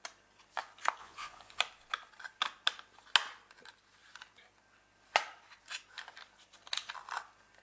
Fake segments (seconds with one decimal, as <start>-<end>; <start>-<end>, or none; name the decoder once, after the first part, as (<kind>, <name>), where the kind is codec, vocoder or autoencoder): 1.0-1.6 (vocoder, Vocos)